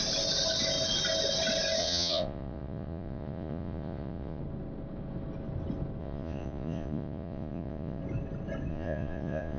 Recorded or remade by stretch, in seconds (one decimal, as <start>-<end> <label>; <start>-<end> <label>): 0.0-1.8 recorded; 1.8-4.4 remade; 4.4-6.0 recorded; 6.0-8.0 remade; 8.0-8.7 recorded; 8.7-9.6 remade